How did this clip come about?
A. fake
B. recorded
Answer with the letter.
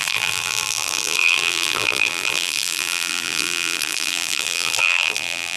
A